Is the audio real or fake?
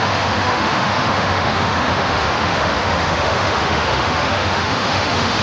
fake